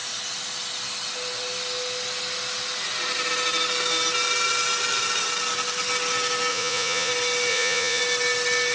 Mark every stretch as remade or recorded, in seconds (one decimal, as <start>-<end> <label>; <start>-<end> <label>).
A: 0.0-6.5 recorded; 6.5-7.1 remade; 7.1-7.5 recorded; 7.5-8.0 remade; 8.0-8.7 recorded